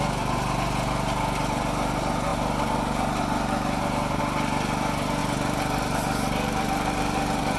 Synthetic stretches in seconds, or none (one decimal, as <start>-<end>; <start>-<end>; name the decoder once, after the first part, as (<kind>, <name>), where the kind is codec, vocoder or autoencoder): 2.3-4.2 (vocoder, BigVGAN v2); 5.2-7.6